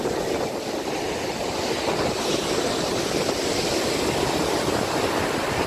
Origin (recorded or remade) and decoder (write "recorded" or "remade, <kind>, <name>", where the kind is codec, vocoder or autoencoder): recorded